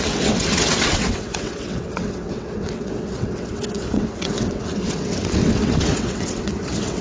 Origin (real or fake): fake